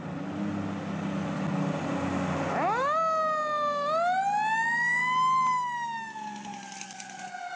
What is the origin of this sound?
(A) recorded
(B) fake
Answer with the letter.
A